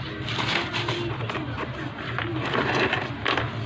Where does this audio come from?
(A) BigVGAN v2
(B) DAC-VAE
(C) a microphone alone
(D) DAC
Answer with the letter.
C